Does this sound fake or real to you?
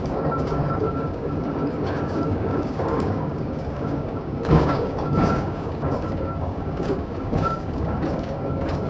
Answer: fake